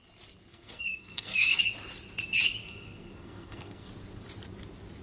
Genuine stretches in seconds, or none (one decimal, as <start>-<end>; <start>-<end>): 0.0-0.5; 1.6-2.6; 3.9-5.0